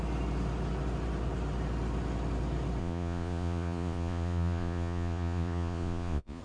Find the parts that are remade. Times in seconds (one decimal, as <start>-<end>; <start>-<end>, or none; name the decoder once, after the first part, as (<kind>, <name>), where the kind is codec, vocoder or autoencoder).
2.8-6.4 (vocoder, Vocos)